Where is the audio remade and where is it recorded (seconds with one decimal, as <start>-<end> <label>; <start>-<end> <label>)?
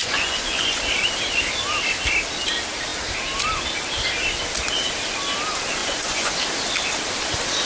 0.0-0.8 remade; 0.8-5.8 recorded; 5.8-6.3 remade; 6.3-7.7 recorded